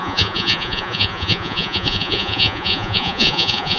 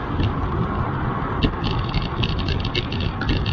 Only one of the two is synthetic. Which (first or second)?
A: first